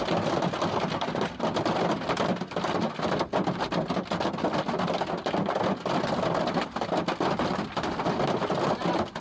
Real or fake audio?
real